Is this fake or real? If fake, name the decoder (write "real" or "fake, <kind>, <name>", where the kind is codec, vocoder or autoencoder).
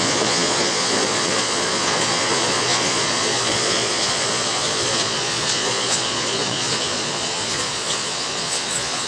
fake, vocoder, Vocos